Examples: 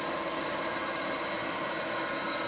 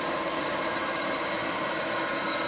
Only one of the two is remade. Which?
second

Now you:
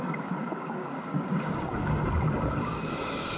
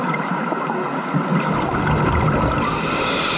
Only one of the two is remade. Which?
first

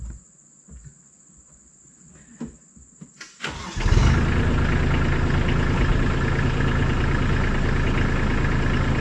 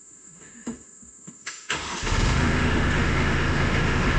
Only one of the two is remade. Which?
second